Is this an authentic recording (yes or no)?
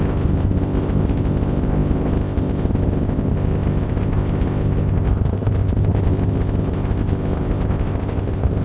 no